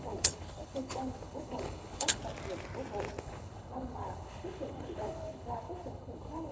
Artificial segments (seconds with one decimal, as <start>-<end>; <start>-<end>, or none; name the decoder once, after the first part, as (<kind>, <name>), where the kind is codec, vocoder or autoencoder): 0.0-2.2 (codec, HILCodec); 3.2-6.5